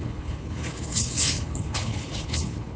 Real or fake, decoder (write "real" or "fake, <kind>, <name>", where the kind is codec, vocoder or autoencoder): fake, codec, HILCodec